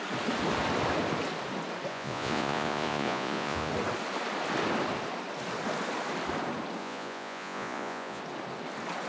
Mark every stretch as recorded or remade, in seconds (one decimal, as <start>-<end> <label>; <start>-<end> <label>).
0.0-1.9 recorded; 1.9-3.7 remade; 3.7-6.8 recorded; 6.8-8.2 remade; 8.2-9.1 recorded